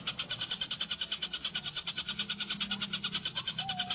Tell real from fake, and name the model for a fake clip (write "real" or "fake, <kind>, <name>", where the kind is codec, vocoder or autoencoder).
real